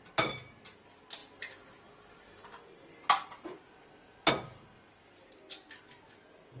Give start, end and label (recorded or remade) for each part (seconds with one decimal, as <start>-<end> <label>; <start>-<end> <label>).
0.0-6.6 recorded

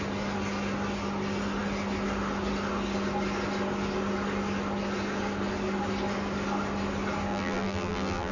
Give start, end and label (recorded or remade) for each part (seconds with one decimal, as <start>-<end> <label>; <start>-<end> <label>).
0.0-7.3 recorded; 7.3-8.3 remade

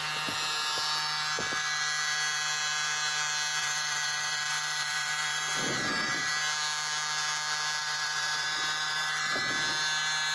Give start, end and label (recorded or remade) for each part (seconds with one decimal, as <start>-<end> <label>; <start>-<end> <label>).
0.0-3.6 recorded; 3.6-6.3 remade; 6.3-7.8 recorded; 7.8-9.4 remade; 9.4-10.3 recorded

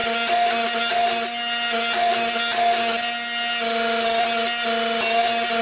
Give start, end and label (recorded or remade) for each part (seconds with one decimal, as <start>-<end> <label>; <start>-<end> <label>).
0.0-5.6 recorded

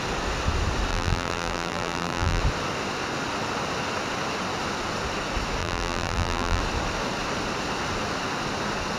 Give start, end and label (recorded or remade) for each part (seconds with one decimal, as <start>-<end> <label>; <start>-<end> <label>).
0.0-0.9 recorded; 0.9-2.4 remade; 2.4-5.6 recorded; 5.6-6.6 remade; 6.6-9.0 recorded